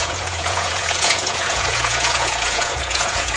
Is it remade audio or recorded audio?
remade